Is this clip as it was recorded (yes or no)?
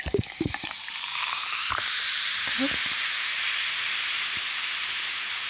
no